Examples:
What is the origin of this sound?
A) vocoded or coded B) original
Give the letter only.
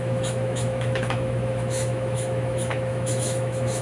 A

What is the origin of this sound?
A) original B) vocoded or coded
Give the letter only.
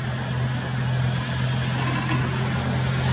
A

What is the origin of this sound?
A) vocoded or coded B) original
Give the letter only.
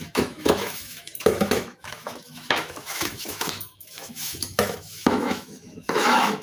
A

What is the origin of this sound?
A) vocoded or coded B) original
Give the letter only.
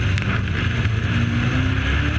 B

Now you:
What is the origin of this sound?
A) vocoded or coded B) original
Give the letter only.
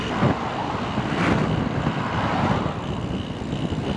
B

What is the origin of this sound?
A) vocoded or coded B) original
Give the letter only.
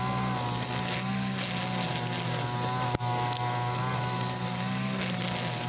B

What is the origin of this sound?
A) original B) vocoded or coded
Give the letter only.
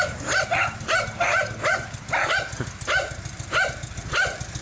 A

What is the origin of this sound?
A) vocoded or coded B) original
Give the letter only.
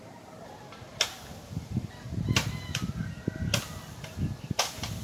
B